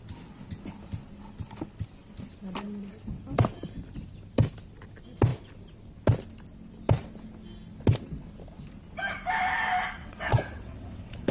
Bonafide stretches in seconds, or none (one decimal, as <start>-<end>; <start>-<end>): 0.0-10.0